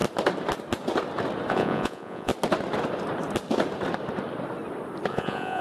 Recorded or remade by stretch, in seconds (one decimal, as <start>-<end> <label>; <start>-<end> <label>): 0.0-1.5 recorded; 1.5-2.3 remade; 2.3-5.1 recorded; 5.1-5.6 remade